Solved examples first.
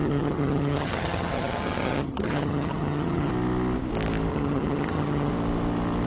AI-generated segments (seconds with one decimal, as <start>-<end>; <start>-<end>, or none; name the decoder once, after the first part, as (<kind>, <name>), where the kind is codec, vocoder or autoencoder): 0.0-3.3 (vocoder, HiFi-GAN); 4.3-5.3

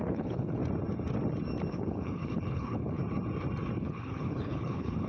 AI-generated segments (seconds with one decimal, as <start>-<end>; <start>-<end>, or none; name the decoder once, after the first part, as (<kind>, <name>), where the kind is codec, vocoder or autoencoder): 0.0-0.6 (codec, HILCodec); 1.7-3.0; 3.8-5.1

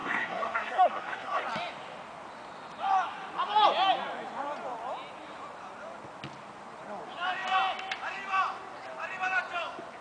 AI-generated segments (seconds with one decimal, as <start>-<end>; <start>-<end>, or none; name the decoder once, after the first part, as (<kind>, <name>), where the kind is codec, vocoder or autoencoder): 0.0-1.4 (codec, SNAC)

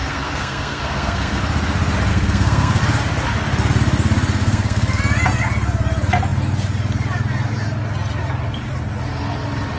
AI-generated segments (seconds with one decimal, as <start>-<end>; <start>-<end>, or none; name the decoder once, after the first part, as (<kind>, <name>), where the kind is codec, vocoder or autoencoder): 0.0-1.4 (codec, SNAC); 2.1-2.8; 4.4-5.0

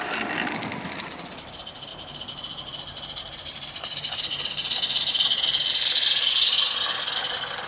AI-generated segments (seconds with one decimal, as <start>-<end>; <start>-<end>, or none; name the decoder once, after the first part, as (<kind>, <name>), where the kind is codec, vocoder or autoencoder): 1.9-6.5 (vocoder, BigVGAN v2)

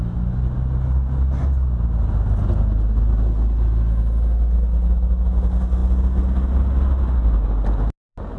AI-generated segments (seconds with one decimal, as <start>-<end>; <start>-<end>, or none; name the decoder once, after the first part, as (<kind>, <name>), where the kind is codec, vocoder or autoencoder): none

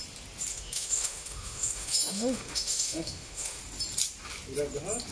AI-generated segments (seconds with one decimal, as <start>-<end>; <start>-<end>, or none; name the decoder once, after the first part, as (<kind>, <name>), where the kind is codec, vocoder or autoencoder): 0.5-3.6 (autoencoder, DAC-VAE)

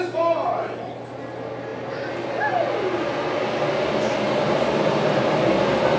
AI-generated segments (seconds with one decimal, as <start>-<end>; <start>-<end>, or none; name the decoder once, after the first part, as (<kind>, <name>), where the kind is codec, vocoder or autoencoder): none